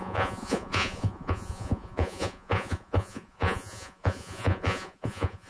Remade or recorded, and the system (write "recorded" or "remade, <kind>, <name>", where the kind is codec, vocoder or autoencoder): remade, vocoder, Vocos